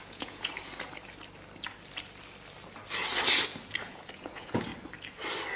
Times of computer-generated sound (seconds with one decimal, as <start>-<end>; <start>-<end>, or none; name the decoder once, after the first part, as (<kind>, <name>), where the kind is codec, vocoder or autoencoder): 0.0-0.5 (vocoder, Vocos); 3.8-4.7